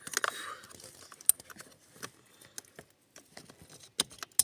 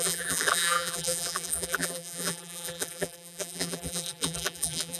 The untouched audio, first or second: first